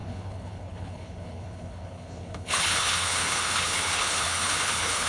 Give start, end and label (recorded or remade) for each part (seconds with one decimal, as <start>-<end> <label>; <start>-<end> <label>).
0.0-5.1 remade